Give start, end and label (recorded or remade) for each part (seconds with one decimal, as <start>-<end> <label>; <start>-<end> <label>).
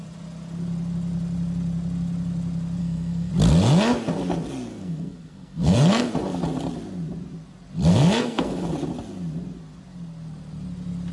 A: 0.0-2.8 recorded; 2.8-3.3 remade; 3.3-4.7 recorded; 4.7-6.1 remade; 6.1-7.9 recorded; 7.9-8.7 remade; 8.7-11.1 recorded